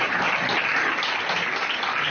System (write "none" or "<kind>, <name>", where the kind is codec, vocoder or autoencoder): none